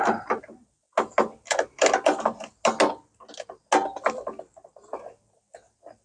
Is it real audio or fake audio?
real